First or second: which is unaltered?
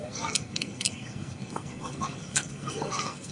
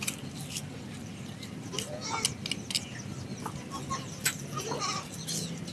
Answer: second